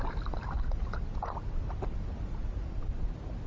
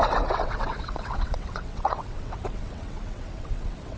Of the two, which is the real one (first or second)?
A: first